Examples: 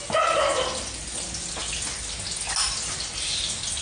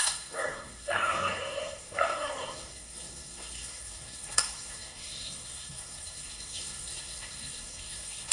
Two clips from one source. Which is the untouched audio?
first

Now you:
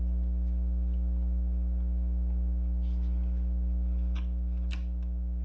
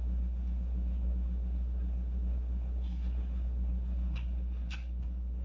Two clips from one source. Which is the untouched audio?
first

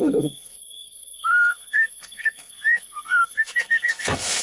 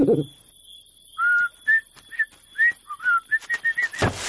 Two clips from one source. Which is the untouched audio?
second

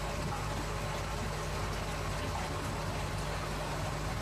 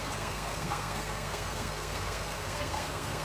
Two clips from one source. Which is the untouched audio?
first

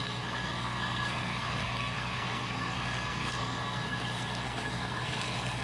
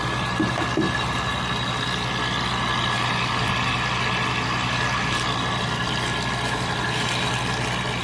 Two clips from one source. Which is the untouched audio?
second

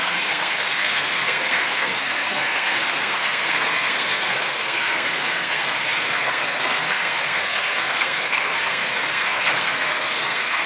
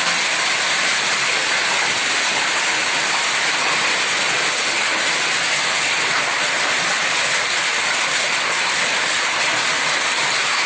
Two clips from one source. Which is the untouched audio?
second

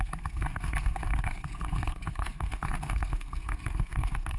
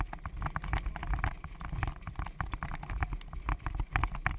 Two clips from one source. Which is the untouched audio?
second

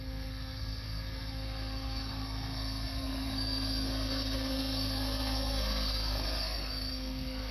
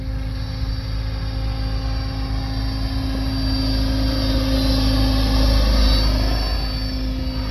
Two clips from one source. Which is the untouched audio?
second